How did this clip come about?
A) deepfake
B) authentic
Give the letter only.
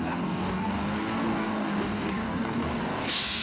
A